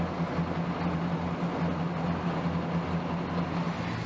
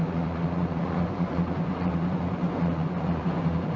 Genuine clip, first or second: first